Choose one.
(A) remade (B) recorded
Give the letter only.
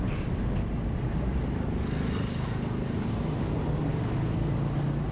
B